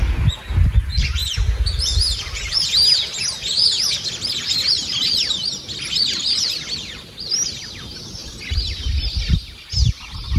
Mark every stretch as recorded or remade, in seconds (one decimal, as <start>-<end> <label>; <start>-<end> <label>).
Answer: 0.0-10.4 recorded

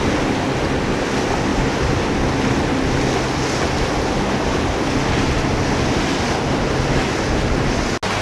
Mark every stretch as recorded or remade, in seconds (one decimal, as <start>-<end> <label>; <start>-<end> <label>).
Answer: 0.0-8.2 recorded

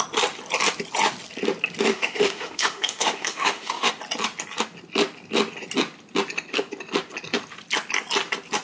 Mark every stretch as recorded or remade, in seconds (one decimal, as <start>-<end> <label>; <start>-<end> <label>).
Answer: 0.0-1.9 recorded; 1.9-3.9 remade; 3.9-8.6 recorded

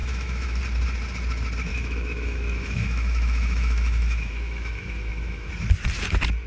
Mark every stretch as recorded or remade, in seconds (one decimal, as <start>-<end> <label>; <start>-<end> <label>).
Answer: 0.0-0.6 remade; 0.6-1.7 recorded; 1.7-5.5 remade; 5.5-6.5 recorded

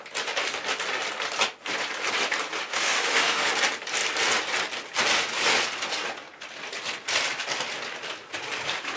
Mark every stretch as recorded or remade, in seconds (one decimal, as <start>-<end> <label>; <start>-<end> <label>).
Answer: 0.0-2.7 recorded; 2.7-3.5 remade; 3.5-9.0 recorded

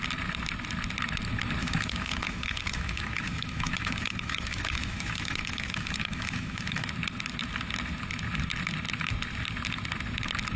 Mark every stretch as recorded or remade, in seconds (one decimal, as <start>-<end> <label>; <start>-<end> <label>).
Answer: 0.0-1.6 recorded; 1.6-6.9 remade; 6.9-10.6 recorded

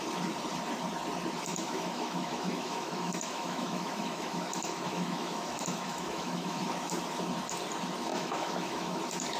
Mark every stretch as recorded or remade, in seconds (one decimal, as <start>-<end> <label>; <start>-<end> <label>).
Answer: 0.0-1.5 recorded; 1.5-6.6 remade; 6.6-8.1 recorded; 8.1-9.0 remade; 9.0-9.4 recorded

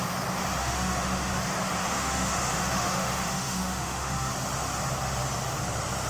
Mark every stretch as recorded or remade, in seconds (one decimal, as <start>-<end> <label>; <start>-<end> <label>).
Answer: 0.0-0.6 recorded; 0.6-1.4 remade; 1.4-1.8 recorded; 1.8-4.3 remade; 4.3-6.1 recorded